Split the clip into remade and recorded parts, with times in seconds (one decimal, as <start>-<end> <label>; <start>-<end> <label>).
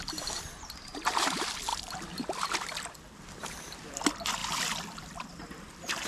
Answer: 0.0-1.7 recorded; 1.7-4.0 remade; 4.0-4.4 recorded; 4.4-6.1 remade